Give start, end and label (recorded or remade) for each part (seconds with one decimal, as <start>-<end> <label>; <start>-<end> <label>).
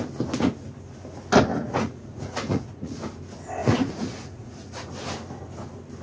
0.0-1.5 recorded; 1.5-3.0 remade; 3.0-3.6 recorded; 3.6-4.9 remade; 4.9-6.0 recorded